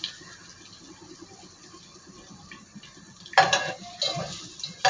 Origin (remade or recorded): recorded